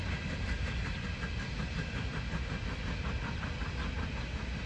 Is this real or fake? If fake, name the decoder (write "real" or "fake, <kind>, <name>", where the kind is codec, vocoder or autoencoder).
real